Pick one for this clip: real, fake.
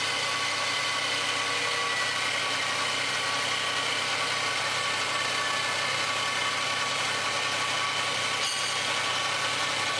real